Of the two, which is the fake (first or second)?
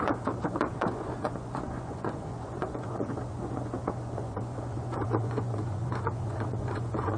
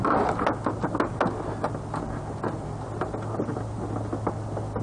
first